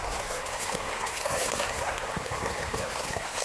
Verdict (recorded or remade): remade